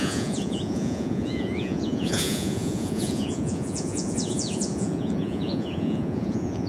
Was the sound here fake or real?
fake